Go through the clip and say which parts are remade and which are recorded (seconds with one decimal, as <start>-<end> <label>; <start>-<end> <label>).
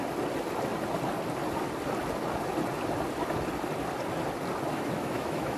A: 0.0-4.7 recorded; 4.7-5.6 remade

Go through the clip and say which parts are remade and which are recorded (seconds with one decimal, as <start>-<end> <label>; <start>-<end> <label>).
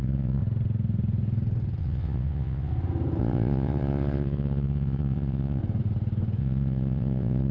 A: 0.0-0.4 remade; 0.4-1.8 recorded; 1.8-2.7 remade; 2.7-3.2 recorded; 3.2-5.6 remade; 5.6-6.4 recorded; 6.4-7.5 remade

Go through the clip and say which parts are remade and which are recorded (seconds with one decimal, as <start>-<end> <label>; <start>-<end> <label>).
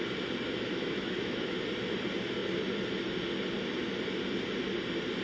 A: 0.0-0.7 recorded; 0.7-1.6 remade; 1.6-5.2 recorded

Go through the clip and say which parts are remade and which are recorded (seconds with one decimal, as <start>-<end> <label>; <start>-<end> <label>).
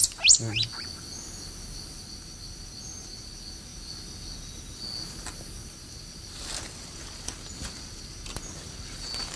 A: 0.0-9.4 recorded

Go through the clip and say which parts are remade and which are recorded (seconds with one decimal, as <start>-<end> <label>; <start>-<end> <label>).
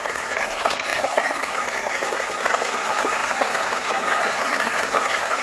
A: 0.0-5.4 remade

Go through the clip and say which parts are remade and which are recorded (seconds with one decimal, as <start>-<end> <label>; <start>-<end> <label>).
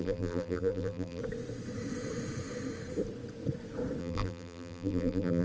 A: 0.0-1.2 remade; 1.2-4.0 recorded; 4.0-5.4 remade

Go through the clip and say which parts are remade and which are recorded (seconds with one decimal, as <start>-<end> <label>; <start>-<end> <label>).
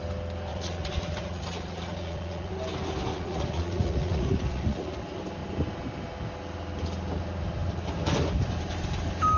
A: 0.0-0.5 recorded; 0.5-2.5 remade; 2.5-3.1 recorded; 3.1-5.0 remade; 5.0-9.4 recorded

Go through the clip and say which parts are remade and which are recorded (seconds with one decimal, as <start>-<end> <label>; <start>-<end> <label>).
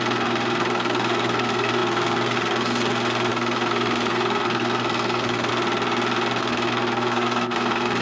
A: 0.0-5.5 remade; 5.5-6.4 recorded; 6.4-8.0 remade